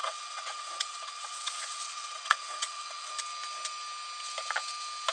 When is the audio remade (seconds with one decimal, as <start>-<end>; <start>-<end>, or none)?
0.0-3.1